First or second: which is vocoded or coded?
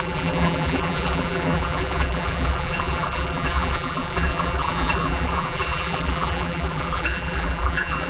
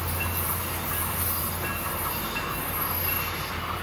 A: first